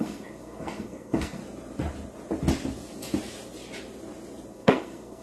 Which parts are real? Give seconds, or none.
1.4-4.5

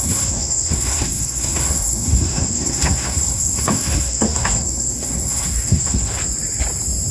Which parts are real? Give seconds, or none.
6.2-7.1